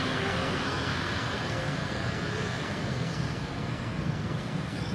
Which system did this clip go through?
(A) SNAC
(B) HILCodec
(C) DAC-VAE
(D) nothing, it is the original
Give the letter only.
A